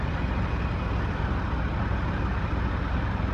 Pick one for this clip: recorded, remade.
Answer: recorded